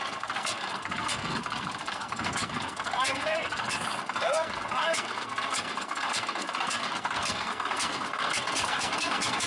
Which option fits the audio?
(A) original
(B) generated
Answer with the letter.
B